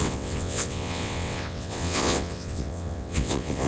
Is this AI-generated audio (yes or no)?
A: yes